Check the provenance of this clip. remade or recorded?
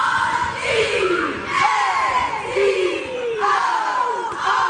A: remade